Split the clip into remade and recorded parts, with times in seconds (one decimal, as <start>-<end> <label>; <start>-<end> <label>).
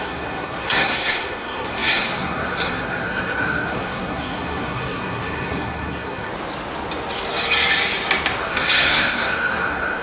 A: 0.0-6.3 remade; 6.3-8.4 recorded; 8.4-10.0 remade